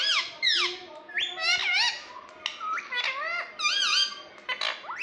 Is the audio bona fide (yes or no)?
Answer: yes